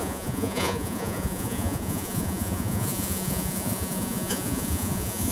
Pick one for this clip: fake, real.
fake